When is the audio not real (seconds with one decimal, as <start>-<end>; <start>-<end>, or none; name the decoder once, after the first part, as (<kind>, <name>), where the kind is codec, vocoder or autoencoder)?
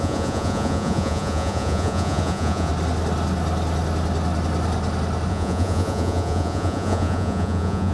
0.0-2.7 (vocoder, Vocos); 5.3-7.9